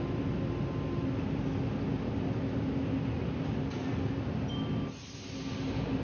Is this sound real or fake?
real